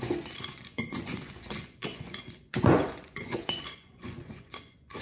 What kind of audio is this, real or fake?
fake